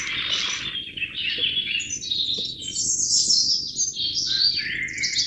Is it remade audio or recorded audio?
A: recorded